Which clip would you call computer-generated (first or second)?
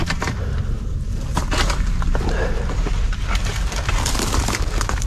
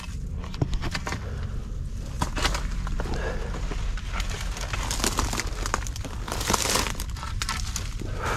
first